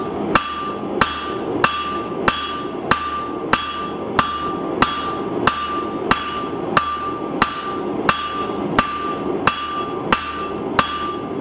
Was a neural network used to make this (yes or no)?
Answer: no